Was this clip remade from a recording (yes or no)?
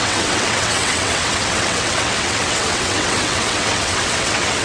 yes